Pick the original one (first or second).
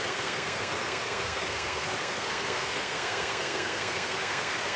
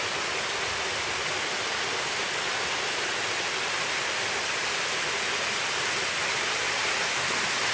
second